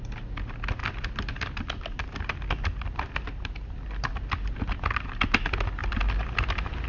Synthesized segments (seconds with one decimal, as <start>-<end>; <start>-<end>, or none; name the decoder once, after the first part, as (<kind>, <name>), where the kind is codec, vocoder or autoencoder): 0.8-4.9 (vocoder, BigVGAN v2); 5.8-6.5